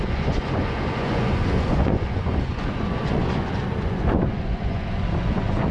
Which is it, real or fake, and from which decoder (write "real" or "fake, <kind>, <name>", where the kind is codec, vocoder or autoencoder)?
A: fake, vocoder, Vocos